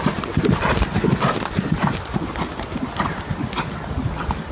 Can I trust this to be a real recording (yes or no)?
yes